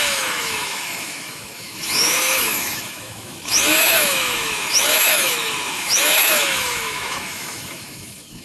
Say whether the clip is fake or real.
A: fake